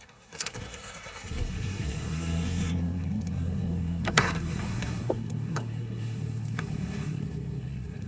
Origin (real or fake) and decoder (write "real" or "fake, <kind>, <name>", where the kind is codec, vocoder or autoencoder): fake, codec, SNAC